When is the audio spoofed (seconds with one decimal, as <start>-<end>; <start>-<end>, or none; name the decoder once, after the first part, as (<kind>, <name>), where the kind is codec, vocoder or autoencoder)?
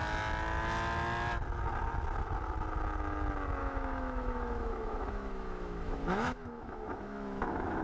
3.6-7.8 (autoencoder, DAC-VAE)